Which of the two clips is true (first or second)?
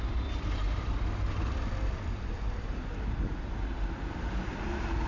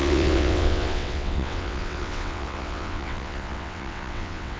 first